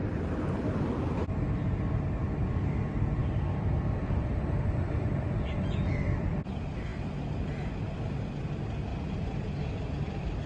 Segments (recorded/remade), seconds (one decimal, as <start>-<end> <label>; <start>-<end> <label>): 0.0-3.2 recorded; 3.2-6.4 remade; 6.4-8.9 recorded; 8.9-10.5 remade

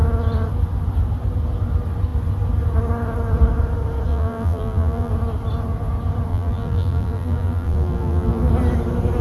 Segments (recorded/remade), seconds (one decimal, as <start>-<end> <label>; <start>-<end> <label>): 0.0-4.1 recorded; 4.1-5.1 remade; 5.1-6.3 recorded; 6.3-8.5 remade; 8.5-9.2 recorded

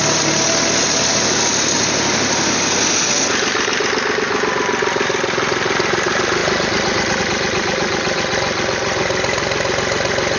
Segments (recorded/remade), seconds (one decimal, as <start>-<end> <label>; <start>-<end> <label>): 0.0-10.4 recorded